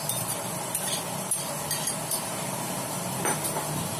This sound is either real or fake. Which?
fake